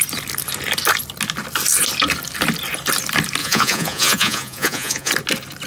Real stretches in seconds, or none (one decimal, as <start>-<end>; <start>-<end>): 0.0-3.4; 5.1-5.7